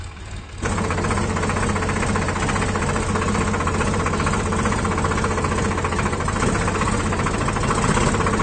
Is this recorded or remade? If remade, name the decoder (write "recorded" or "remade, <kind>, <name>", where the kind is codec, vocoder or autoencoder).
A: recorded